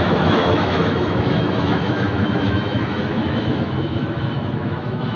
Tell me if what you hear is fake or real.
fake